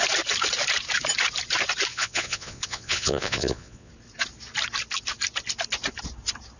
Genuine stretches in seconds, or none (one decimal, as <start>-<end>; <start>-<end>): 0.0-1.9; 3.9-6.6